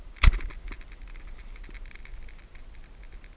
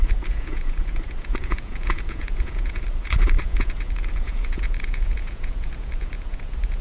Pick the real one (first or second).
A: first